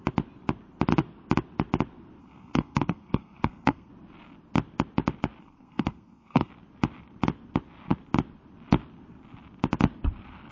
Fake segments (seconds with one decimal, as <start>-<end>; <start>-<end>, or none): 2.2-3.9; 5.4-6.5